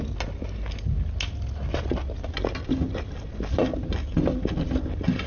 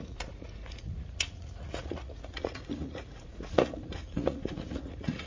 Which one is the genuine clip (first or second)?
first